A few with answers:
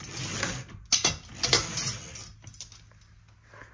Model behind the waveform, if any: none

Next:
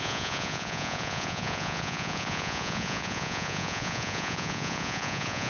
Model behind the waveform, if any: vocoder, Vocos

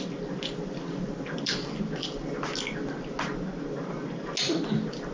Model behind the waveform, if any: none